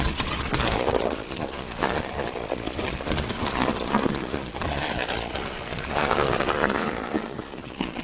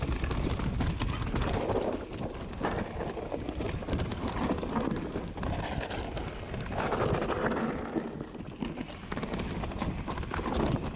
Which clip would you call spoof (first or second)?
first